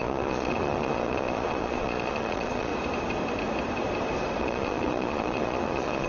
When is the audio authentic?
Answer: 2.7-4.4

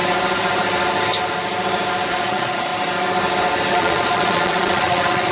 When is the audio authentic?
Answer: 0.0-2.1; 2.7-3.7

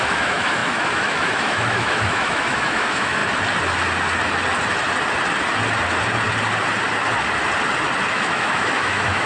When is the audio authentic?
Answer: 3.2-8.1

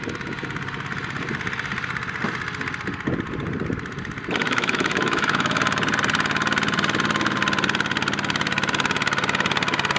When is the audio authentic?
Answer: 0.0-4.4; 5.6-10.0

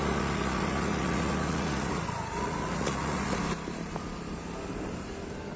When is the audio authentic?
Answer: 3.4-5.6